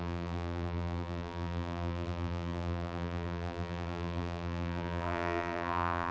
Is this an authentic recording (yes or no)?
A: no